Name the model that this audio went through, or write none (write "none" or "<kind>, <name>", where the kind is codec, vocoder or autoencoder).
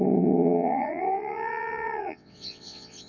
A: vocoder, WaveNeXt